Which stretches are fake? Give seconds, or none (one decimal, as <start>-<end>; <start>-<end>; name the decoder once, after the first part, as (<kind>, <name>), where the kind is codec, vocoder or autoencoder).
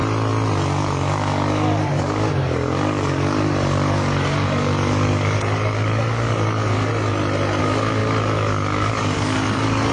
0.8-6.9 (codec, DAC); 7.6-9.9